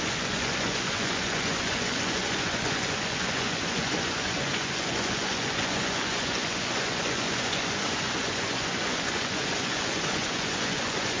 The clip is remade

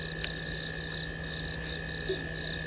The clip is recorded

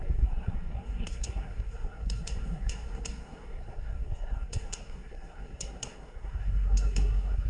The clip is remade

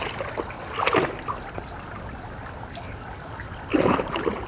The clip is recorded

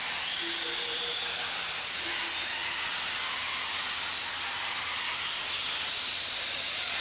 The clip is recorded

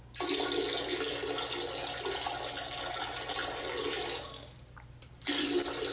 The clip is recorded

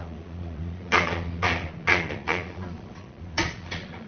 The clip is remade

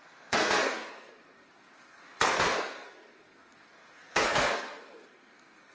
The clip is remade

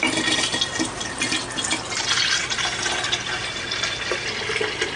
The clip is recorded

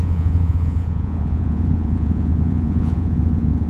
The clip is remade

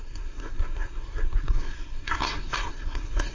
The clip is remade